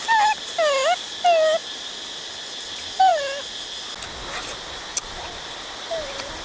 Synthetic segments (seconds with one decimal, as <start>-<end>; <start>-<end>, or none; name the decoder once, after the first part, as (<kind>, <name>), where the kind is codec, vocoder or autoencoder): none